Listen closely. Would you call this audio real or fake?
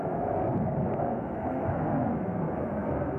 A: fake